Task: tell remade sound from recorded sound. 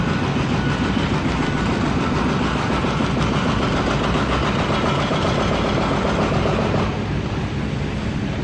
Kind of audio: recorded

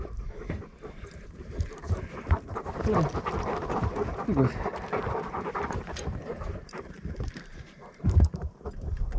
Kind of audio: remade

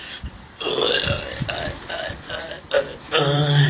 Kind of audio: recorded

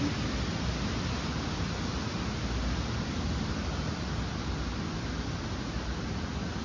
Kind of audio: recorded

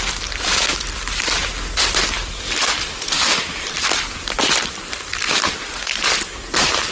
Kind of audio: remade